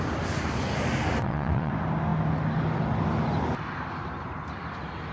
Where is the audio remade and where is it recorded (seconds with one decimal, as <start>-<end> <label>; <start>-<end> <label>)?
0.0-1.2 recorded; 1.2-1.7 remade; 1.7-5.1 recorded